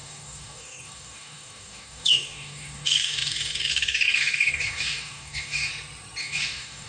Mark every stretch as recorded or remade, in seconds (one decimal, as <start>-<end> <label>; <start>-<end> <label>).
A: 0.0-5.7 remade; 5.7-6.2 recorded; 6.2-6.9 remade